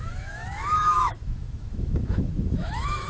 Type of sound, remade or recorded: remade